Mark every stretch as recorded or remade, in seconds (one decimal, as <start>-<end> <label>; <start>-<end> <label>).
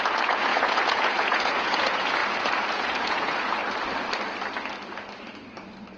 0.0-2.2 remade; 2.2-2.7 recorded; 2.7-3.6 remade; 3.6-6.0 recorded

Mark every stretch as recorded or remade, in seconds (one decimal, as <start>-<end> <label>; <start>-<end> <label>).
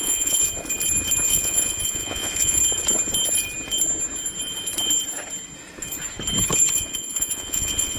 0.0-0.4 remade; 0.4-1.3 recorded; 1.3-2.6 remade; 2.6-6.7 recorded; 6.7-8.0 remade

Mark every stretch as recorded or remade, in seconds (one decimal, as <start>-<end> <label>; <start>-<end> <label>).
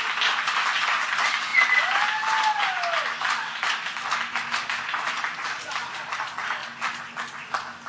0.0-7.9 recorded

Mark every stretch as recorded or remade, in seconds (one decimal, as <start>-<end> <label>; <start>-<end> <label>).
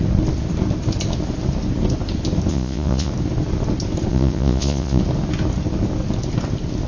0.0-2.5 recorded; 2.5-3.1 remade; 3.1-4.1 recorded; 4.1-5.0 remade; 5.0-6.9 recorded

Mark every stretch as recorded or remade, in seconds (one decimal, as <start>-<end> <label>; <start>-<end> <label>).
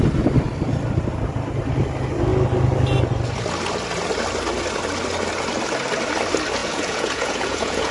0.0-6.6 recorded; 6.6-7.9 remade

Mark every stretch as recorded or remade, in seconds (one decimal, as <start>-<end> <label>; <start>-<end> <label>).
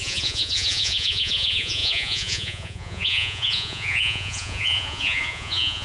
0.0-5.8 remade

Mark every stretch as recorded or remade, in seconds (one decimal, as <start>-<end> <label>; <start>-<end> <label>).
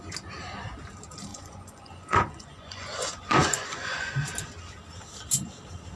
0.0-1.3 recorded; 1.3-4.1 remade; 4.1-6.0 recorded